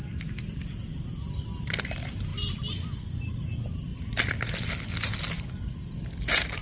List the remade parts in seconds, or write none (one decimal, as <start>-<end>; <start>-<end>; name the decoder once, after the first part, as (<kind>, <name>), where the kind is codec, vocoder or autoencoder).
none